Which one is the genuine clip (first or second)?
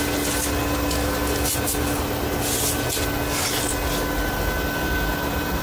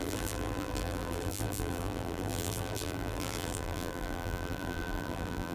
first